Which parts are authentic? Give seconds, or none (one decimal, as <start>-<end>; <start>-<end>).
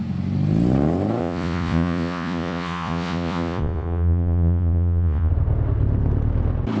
0.0-1.2; 5.3-6.8